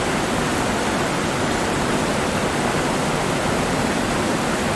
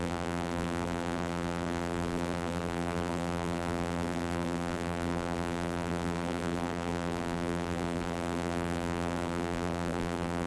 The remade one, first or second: second